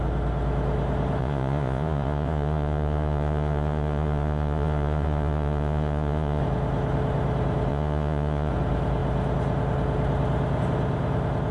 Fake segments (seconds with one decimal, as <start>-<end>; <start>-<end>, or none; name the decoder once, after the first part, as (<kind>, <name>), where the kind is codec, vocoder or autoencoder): 1.2-6.4 (vocoder, Vocos); 7.7-8.5